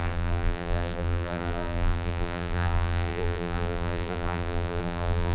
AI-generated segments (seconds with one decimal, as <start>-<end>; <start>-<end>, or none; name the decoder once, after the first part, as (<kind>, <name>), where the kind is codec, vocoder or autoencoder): 0.0-5.3 (vocoder, BigVGAN v2)